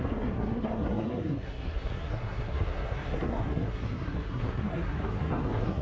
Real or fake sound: fake